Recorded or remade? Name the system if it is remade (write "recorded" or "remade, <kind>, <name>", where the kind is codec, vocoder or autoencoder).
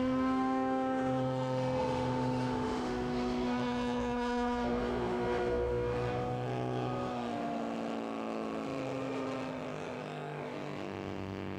remade, autoencoder, DAC-VAE